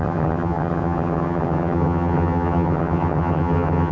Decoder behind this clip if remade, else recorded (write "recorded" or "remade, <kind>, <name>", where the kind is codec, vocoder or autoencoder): remade, vocoder, HiFi-GAN